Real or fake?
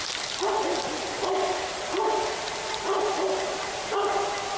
real